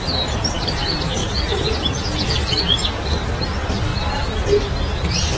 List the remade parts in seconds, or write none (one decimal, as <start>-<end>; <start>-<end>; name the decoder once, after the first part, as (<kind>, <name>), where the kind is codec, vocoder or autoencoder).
none